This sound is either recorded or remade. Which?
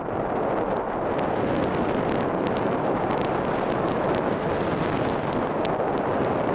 recorded